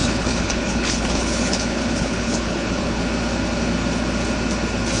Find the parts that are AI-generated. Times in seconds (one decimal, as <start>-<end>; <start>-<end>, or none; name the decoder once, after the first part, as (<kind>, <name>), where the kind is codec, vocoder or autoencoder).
0.0-3.0 (codec, HILCodec)